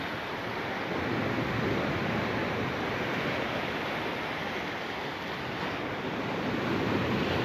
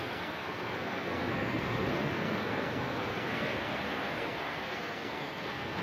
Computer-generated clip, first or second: second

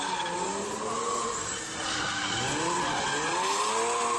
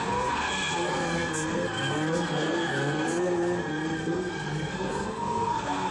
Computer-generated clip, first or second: second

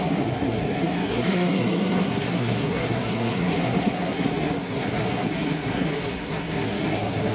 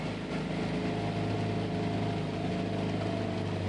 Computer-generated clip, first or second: first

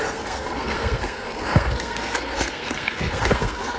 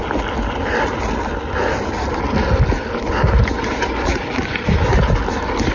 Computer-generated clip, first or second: first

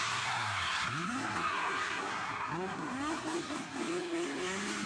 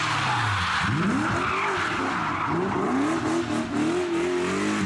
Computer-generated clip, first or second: first